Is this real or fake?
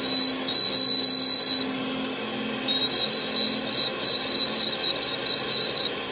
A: real